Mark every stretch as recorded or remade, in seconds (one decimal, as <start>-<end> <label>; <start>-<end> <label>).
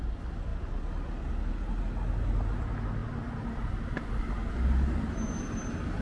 0.0-6.0 recorded